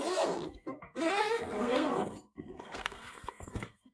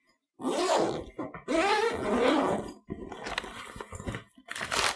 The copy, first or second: first